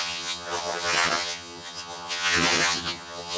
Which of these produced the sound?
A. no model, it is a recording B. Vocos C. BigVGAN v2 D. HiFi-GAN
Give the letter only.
D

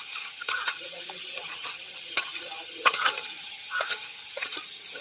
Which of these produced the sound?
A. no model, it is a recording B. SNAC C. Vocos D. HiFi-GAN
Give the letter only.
D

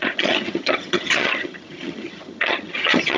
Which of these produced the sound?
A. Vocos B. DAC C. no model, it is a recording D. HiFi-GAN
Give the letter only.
D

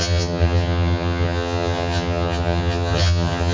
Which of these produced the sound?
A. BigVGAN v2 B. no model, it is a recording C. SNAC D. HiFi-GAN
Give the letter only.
D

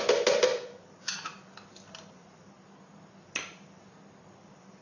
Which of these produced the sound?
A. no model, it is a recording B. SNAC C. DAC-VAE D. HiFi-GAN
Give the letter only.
A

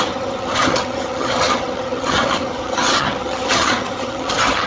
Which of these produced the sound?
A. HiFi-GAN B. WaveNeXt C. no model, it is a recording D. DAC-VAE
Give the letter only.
A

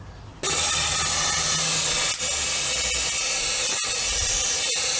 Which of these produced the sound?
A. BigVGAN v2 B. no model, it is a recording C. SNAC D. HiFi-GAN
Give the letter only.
B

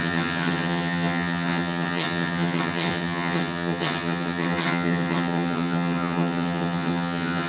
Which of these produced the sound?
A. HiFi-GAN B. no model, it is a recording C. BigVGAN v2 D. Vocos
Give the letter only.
A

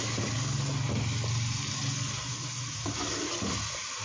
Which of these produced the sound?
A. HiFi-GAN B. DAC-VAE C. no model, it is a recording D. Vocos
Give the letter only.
C